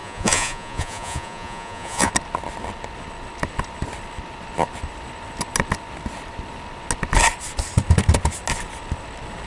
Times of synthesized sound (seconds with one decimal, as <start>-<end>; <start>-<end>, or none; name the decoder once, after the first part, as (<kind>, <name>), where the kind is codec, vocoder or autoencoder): 0.0-2.1 (vocoder, Vocos)

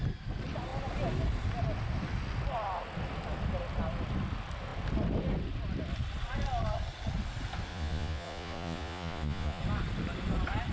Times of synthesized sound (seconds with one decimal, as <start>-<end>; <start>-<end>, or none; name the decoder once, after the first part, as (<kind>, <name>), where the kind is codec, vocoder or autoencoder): 7.7-9.6 (vocoder, Vocos)

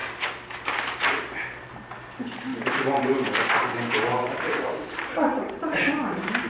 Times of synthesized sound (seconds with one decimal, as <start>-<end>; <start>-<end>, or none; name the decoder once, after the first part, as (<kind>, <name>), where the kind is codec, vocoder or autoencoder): 2.5-3.0 (vocoder, BigVGAN v2); 4.1-6.5

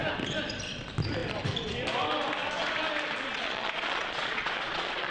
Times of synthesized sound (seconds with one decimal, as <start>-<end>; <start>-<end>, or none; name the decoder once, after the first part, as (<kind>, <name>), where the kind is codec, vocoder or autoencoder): 3.3-5.1 (vocoder, Vocos)

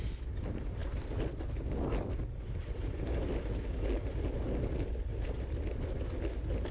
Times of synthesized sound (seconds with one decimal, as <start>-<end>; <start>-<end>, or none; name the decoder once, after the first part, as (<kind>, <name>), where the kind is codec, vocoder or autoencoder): none

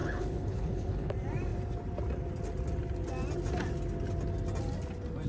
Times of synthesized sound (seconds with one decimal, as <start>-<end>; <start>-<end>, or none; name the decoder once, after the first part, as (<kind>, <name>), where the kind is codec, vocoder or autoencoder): 0.0-1.1 (codec, HILCodec)

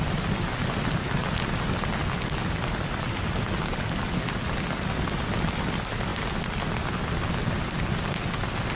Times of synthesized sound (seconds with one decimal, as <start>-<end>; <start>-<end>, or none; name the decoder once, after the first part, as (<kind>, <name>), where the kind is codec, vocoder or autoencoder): none

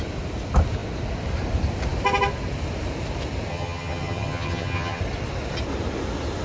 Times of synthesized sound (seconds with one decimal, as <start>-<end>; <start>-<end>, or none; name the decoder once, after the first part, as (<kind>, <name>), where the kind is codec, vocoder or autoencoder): 3.5-5.0 (vocoder, HiFi-GAN)